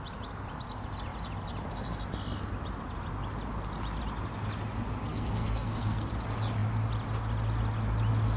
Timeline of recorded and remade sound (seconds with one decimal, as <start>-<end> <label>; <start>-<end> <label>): 0.0-5.1 recorded; 5.1-6.1 remade; 6.1-8.4 recorded